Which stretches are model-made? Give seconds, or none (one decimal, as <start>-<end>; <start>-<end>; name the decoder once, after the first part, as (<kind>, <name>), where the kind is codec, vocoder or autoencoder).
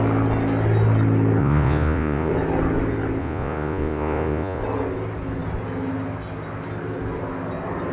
1.4-2.3 (vocoder, Vocos); 3.2-4.6